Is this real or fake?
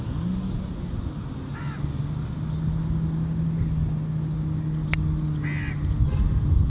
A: real